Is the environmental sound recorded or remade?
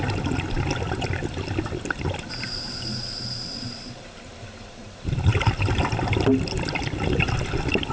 recorded